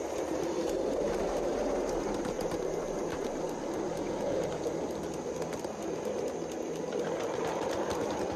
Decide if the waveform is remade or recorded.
recorded